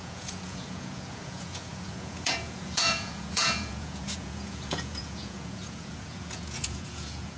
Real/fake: fake